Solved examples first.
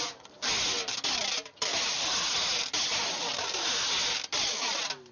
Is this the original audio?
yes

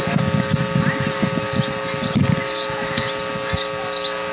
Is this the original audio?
yes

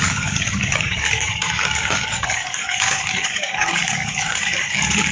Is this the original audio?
no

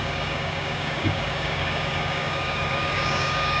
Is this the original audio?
no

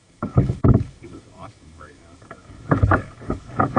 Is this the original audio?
no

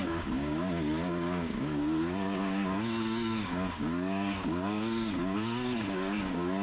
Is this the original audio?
no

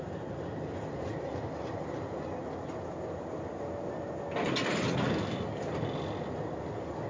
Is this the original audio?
yes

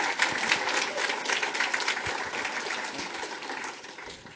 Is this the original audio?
yes